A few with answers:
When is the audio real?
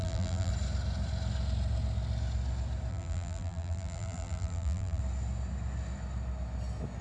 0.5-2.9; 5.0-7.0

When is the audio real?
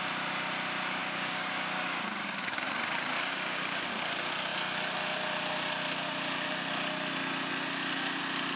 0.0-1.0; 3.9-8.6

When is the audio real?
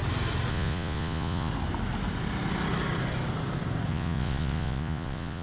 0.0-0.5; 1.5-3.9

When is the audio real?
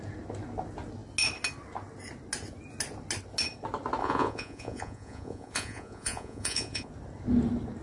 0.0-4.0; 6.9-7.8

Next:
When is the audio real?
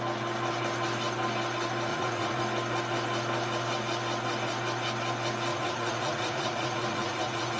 0.0-1.9; 2.4-5.5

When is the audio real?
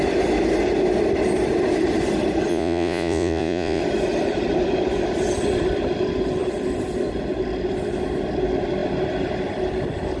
0.0-2.5; 3.8-10.2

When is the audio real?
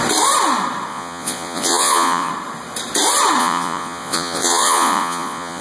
0.0-0.9; 2.3-3.4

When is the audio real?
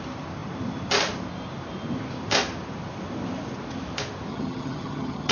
0.0-4.3